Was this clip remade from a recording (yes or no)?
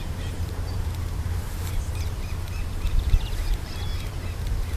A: yes